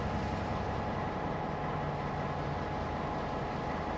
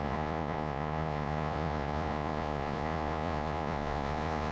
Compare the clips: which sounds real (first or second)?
first